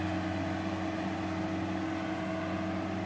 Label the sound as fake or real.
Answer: real